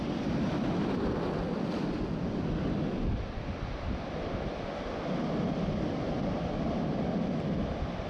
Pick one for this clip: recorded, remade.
recorded